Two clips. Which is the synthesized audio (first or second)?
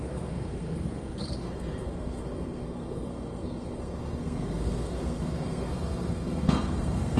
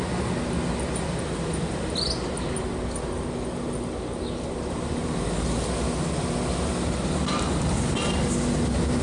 first